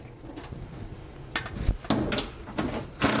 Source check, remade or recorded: recorded